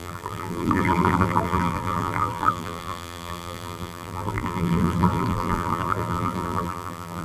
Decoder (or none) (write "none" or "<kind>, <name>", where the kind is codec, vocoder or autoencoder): vocoder, BigVGAN v2